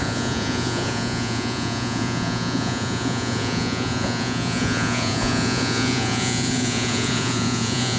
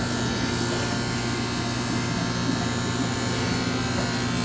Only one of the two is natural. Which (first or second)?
second